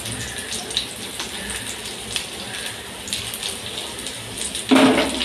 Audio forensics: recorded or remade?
recorded